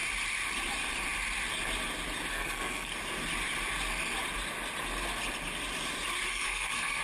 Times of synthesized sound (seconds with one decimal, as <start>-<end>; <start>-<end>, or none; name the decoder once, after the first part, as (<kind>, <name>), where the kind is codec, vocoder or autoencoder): 2.3-2.9 (codec, SNAC); 6.3-7.0